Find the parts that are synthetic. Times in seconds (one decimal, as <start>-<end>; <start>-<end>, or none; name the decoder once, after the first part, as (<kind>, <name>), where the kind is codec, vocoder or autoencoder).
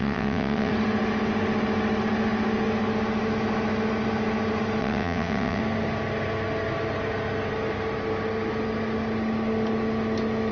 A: 0.0-0.7 (vocoder, WaveNeXt); 4.8-5.6